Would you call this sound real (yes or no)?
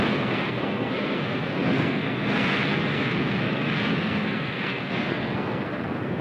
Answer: no